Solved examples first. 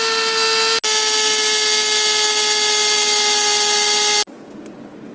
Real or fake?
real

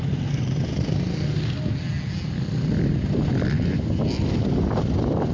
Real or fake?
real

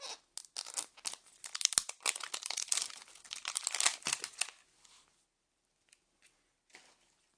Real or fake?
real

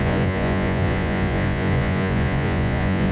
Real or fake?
fake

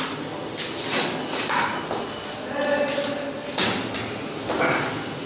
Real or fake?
real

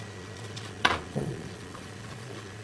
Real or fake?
fake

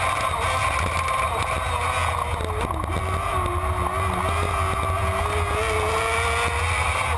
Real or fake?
real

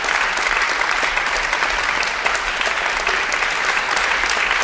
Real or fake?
real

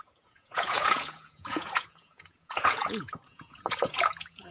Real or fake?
fake